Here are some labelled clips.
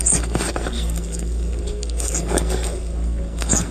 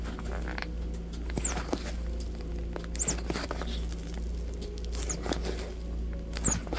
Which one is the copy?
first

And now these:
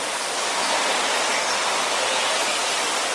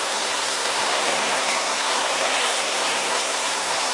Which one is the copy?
second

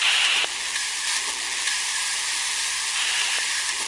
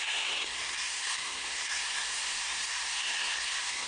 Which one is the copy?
second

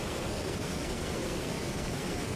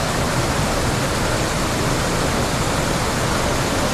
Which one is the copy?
first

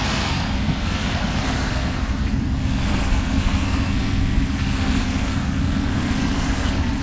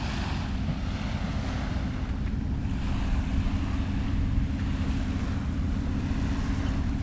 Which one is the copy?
first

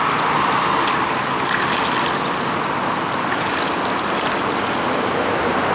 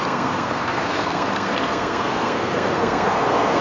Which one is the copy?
second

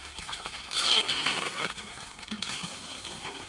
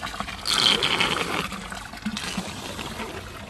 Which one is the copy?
first